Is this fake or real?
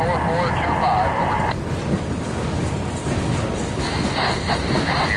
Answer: real